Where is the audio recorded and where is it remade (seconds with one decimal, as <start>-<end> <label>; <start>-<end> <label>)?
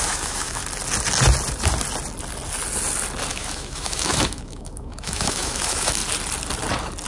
0.0-0.6 remade; 0.6-3.3 recorded; 3.3-6.0 remade; 6.0-7.1 recorded